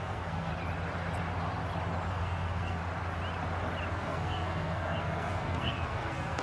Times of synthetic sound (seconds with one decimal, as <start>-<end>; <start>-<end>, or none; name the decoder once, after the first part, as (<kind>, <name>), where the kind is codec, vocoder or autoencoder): 0.0-0.5 (codec, SNAC); 2.1-2.8; 3.9-6.4